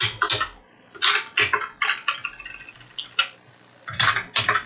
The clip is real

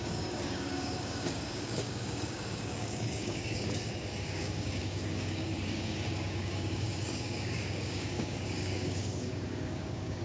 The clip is fake